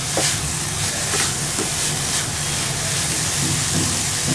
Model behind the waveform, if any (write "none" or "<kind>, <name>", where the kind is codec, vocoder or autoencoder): none